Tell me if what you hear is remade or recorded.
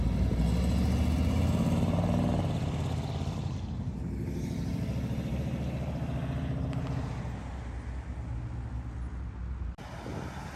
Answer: recorded